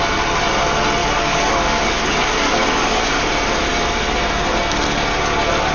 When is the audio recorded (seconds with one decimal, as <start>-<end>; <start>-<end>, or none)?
0.0-1.0; 3.2-5.7